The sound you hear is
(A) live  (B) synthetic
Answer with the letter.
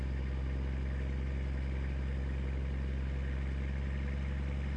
A